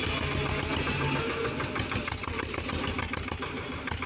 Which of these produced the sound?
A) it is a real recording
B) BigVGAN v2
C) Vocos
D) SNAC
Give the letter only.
A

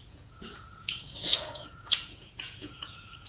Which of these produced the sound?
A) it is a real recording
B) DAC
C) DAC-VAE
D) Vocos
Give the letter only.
D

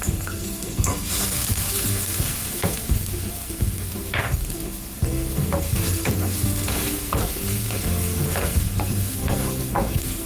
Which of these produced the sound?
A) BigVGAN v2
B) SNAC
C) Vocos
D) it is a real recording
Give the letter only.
B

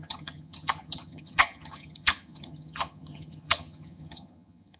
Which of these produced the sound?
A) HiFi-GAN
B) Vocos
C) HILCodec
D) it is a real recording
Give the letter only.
A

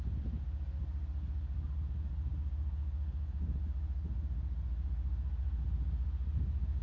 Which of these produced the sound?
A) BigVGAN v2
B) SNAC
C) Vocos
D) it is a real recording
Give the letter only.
D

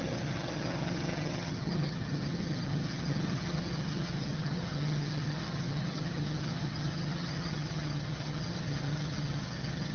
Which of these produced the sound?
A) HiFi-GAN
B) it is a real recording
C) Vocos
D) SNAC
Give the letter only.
A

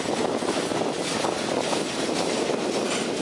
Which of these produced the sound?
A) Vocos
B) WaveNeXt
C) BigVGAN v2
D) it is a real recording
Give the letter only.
D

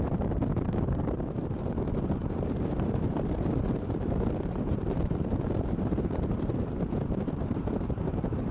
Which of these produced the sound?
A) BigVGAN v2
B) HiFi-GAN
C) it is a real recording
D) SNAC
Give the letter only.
A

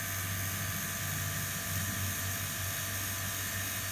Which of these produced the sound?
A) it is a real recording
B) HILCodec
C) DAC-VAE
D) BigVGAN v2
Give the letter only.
A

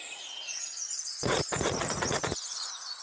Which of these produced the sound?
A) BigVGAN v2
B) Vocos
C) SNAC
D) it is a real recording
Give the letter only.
B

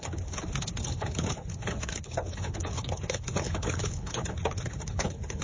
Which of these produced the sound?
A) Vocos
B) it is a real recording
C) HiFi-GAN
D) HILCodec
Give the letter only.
D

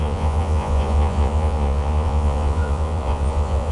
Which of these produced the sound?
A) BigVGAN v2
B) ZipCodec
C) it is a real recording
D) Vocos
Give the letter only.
D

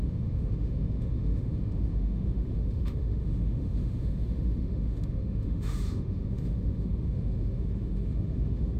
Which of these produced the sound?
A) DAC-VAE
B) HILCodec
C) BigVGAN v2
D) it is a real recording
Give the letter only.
A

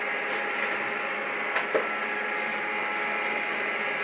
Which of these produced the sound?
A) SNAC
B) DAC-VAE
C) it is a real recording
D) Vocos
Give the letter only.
C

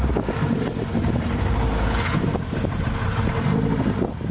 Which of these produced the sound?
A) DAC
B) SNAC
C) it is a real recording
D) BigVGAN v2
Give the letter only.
C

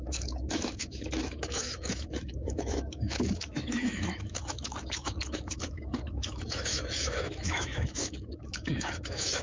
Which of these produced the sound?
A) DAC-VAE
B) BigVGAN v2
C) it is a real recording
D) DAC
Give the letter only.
A